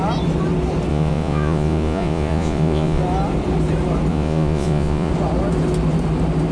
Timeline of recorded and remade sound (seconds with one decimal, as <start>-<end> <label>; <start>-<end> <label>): 0.0-0.9 recorded; 0.9-3.0 remade; 3.0-4.1 recorded; 4.1-5.1 remade; 5.1-6.5 recorded